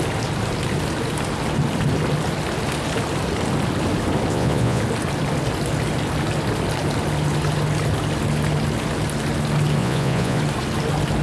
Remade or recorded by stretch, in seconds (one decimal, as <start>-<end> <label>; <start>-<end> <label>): 0.0-4.3 recorded; 4.3-4.8 remade; 4.8-9.8 recorded; 9.8-10.4 remade; 10.4-11.2 recorded